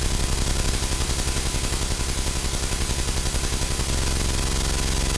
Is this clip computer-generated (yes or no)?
no